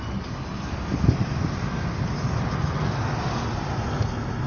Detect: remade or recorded recorded